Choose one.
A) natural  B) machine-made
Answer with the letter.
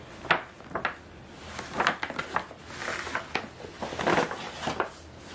A